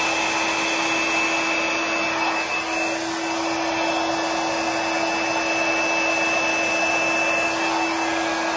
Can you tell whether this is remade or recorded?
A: recorded